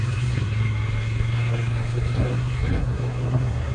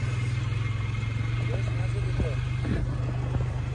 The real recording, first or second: second